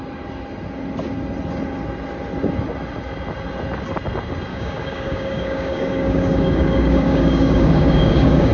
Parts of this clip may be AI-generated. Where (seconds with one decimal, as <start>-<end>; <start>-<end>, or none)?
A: 4.5-8.5